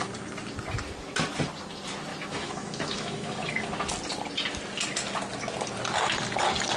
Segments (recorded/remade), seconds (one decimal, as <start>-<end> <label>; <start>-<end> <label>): 0.0-2.1 recorded; 2.1-3.6 remade; 3.6-6.8 recorded